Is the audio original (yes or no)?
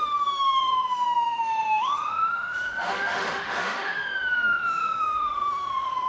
no